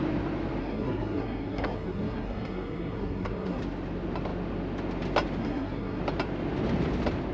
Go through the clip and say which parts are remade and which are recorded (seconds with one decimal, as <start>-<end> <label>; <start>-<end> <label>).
0.0-0.6 recorded; 0.6-3.6 remade; 3.6-5.4 recorded; 5.4-6.0 remade; 6.0-7.3 recorded